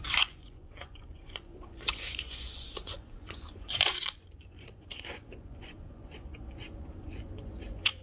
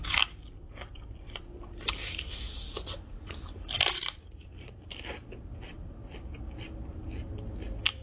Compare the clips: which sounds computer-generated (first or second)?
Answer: first